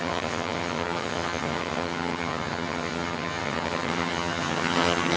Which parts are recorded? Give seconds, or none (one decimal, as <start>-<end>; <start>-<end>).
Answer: none